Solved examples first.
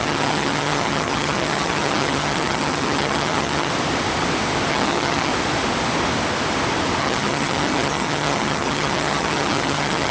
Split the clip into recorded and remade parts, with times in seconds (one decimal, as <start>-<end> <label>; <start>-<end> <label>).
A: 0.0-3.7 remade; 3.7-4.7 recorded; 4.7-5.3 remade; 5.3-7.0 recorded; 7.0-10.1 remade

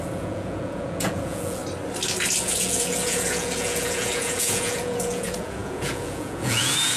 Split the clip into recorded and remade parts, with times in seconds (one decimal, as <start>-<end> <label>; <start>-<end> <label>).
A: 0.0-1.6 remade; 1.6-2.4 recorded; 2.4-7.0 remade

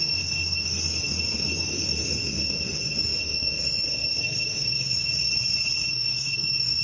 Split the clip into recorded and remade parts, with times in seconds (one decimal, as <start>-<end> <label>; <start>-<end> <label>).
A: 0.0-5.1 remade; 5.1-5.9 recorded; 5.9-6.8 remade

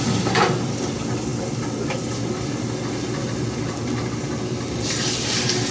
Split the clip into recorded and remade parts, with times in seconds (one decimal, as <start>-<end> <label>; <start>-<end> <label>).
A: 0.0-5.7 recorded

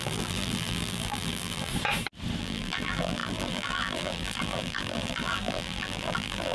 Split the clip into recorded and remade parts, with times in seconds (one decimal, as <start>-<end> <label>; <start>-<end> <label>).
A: 0.0-1.7 remade; 1.7-2.4 recorded; 2.4-6.5 remade